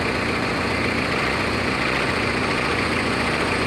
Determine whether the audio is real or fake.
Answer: fake